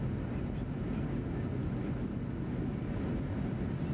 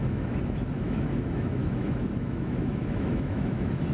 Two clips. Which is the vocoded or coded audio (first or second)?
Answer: second